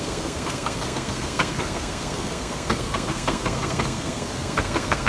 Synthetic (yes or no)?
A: yes